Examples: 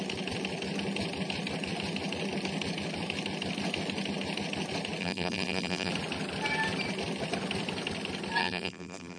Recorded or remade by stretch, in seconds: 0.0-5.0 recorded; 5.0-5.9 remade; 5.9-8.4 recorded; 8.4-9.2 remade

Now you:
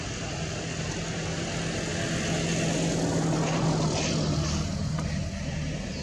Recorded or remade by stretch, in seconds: 0.0-6.0 recorded

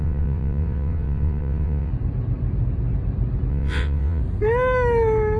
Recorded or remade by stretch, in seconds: 0.0-1.9 remade; 1.9-3.5 recorded; 3.5-4.2 remade; 4.2-5.4 recorded

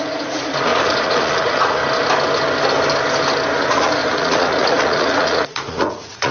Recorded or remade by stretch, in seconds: 0.0-1.8 remade; 1.8-3.6 recorded; 3.6-6.3 remade

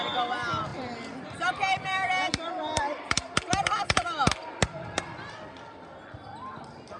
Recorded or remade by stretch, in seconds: 0.0-0.7 recorded; 0.7-3.3 remade; 3.3-7.0 recorded

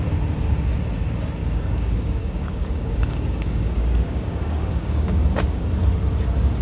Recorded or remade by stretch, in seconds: 0.0-1.4 recorded; 1.4-5.4 remade; 5.4-6.6 recorded

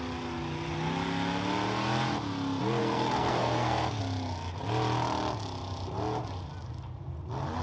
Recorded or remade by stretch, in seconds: 0.0-2.8 recorded; 2.8-4.0 remade; 4.0-7.6 recorded